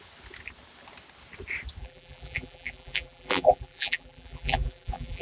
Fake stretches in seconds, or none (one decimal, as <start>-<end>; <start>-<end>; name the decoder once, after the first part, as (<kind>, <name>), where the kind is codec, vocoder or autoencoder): 1.8-5.2 (vocoder, BigVGAN v2)